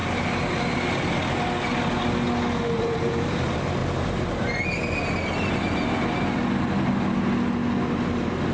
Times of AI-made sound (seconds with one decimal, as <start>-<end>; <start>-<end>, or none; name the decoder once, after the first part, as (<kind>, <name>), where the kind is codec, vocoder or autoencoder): 2.8-3.8 (vocoder, BigVGAN v2)